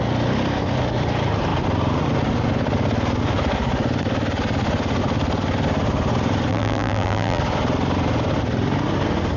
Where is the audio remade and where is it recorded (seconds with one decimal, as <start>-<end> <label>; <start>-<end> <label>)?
0.0-6.5 recorded; 6.5-7.4 remade; 7.4-9.4 recorded